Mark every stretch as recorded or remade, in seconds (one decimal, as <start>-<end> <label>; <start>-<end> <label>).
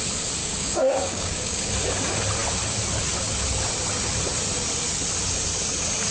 0.0-0.4 recorded; 0.4-1.6 remade; 1.6-6.1 recorded